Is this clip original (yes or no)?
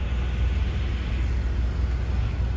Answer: yes